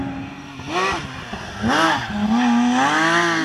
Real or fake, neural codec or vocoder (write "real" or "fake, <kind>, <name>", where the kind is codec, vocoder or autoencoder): real